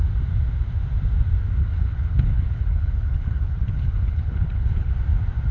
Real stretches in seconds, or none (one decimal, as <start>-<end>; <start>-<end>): 0.0-1.6; 4.9-5.5